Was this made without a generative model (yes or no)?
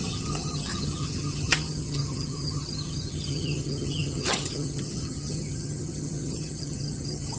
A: no